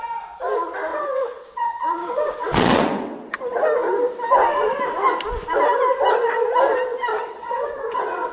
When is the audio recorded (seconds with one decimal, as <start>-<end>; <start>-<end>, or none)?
0.0-0.9; 3.4-7.1